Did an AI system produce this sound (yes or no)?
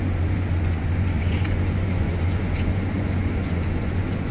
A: yes